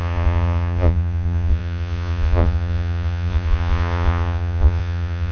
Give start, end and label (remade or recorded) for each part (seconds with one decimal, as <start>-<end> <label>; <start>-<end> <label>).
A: 0.0-5.3 remade